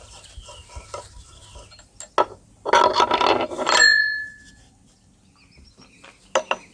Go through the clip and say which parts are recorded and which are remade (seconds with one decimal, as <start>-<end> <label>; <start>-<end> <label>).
0.0-6.7 recorded